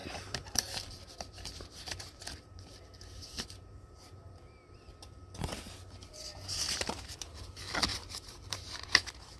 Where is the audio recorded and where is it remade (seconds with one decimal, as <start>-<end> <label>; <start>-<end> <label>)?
0.0-4.5 remade; 4.5-6.1 recorded; 6.1-7.4 remade; 7.4-7.9 recorded; 7.9-9.4 remade